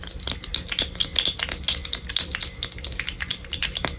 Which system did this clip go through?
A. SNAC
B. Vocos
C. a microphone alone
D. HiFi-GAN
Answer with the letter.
C